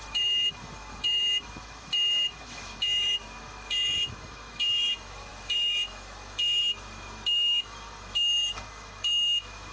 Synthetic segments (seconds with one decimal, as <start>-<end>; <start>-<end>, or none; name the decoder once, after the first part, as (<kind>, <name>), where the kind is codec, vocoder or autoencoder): 0.0-9.7 (autoencoder, DAC-VAE)